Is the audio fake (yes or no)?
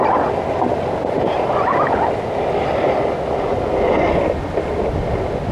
no